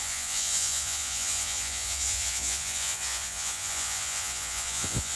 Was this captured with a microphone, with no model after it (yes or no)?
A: no